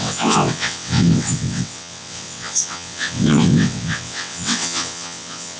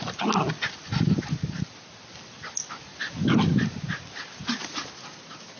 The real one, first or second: second